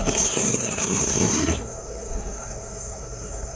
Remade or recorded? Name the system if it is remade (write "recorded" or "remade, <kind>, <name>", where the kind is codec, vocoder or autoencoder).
remade, codec, SNAC